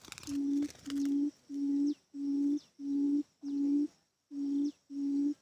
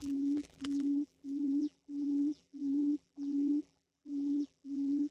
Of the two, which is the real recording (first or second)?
first